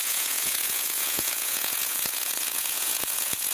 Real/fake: fake